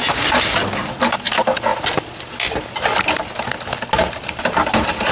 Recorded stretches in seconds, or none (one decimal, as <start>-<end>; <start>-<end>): 0.0-5.1